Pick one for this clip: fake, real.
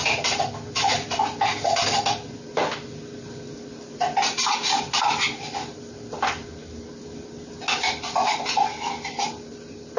real